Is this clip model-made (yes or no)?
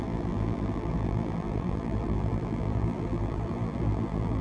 yes